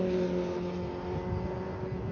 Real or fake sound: real